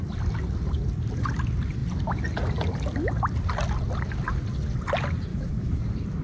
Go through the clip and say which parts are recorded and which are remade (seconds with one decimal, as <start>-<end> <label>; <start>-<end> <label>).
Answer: 0.0-5.3 recorded; 5.3-5.8 remade; 5.8-6.2 recorded